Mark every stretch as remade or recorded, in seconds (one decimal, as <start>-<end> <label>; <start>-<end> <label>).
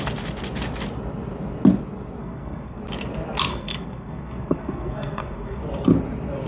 0.0-2.2 recorded; 2.2-2.8 remade; 2.8-3.5 recorded; 3.5-5.6 remade; 5.6-6.5 recorded